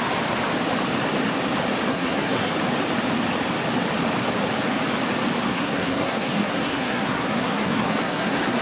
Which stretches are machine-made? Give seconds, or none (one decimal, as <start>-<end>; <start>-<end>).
1.9-2.5; 5.5-8.6